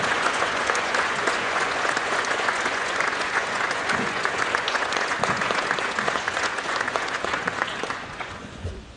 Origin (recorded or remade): remade